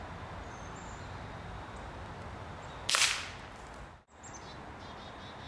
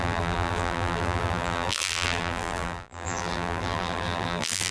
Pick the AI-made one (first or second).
second